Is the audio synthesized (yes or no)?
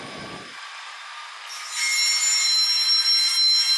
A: no